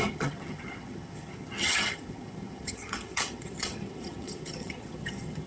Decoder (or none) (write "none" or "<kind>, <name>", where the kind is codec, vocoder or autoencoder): vocoder, HiFi-GAN